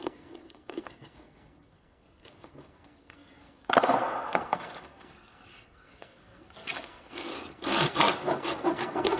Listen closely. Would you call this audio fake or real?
fake